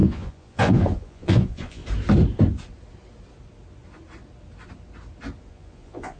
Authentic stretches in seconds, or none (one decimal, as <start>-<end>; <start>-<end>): 1.8-5.5